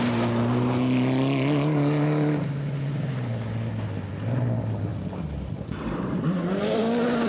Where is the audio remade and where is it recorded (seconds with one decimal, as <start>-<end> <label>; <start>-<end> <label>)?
0.0-7.3 recorded